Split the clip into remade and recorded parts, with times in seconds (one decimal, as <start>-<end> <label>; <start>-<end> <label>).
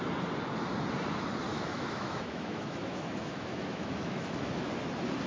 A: 0.0-1.5 recorded; 1.5-4.7 remade; 4.7-5.3 recorded